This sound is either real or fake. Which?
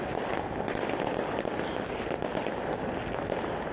real